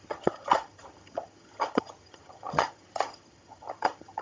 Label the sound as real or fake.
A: fake